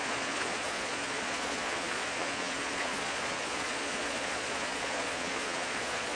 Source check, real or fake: fake